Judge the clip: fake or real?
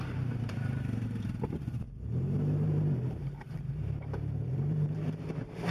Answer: fake